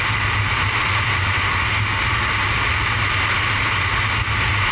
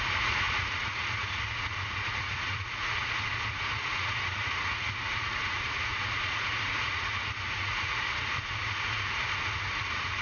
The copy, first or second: second